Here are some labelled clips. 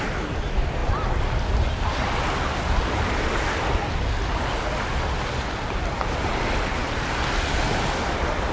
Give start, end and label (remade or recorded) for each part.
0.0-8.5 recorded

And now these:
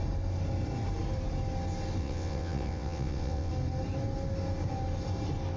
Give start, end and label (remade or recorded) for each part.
0.0-2.0 recorded; 2.0-3.5 remade; 3.5-5.6 recorded

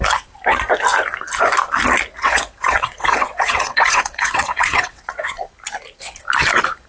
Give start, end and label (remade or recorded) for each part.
0.0-2.2 recorded; 2.2-5.3 remade; 5.3-6.9 recorded

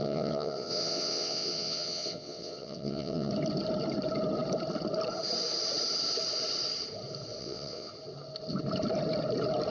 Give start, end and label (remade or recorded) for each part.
0.0-3.3 remade; 3.3-7.4 recorded; 7.4-7.9 remade; 7.9-9.7 recorded